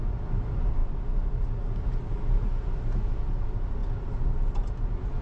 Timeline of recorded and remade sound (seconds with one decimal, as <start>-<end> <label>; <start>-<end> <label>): 0.0-5.2 recorded